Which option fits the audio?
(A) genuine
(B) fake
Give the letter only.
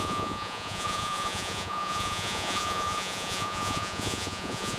B